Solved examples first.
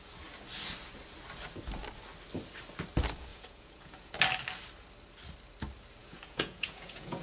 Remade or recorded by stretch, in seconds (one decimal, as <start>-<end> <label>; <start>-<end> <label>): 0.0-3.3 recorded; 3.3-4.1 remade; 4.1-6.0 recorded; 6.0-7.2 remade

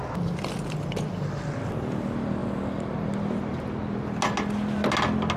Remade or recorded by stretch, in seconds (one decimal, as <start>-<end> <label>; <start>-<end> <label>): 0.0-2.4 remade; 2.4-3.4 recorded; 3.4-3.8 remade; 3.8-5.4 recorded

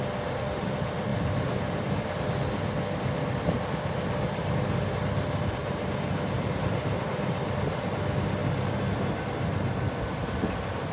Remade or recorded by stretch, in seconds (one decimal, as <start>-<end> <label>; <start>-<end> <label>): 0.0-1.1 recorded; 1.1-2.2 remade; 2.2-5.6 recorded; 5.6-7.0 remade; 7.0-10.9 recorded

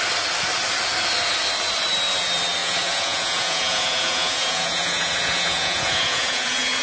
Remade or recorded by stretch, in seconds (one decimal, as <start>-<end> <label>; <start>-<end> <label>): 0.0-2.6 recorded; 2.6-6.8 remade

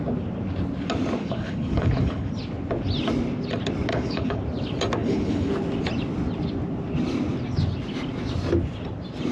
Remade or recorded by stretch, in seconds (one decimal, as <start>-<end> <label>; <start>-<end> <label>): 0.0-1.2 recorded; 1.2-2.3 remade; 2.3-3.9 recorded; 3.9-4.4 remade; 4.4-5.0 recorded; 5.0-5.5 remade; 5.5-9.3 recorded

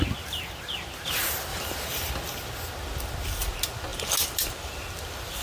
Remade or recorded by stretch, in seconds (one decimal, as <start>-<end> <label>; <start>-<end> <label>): 0.0-1.5 recorded; 1.5-2.1 remade; 2.1-5.4 recorded

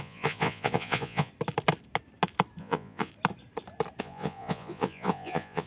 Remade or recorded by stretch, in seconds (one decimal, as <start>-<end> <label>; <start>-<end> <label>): 0.0-1.3 remade; 1.3-2.6 recorded; 2.6-3.1 remade; 3.1-4.0 recorded; 4.0-5.7 remade